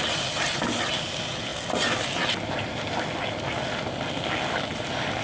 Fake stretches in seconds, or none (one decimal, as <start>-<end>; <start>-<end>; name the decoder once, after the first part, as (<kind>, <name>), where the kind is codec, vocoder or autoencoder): none